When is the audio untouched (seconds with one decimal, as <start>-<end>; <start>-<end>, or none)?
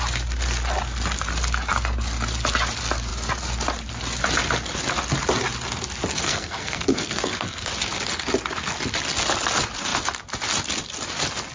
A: 0.0-6.1; 7.7-11.5